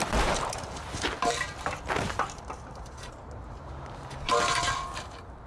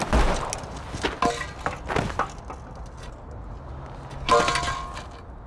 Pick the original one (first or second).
second